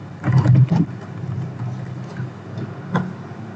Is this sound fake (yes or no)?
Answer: no